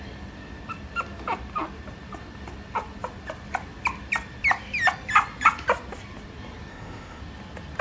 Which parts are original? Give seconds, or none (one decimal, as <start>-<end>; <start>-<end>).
0.0-6.7; 7.2-7.8